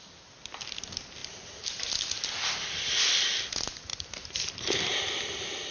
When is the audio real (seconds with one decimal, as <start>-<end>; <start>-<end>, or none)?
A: 0.0-3.9; 4.5-5.7